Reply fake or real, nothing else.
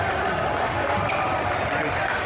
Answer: real